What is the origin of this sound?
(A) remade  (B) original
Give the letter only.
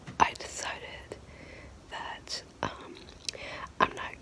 B